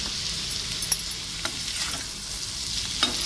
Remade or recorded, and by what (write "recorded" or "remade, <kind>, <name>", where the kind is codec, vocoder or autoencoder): recorded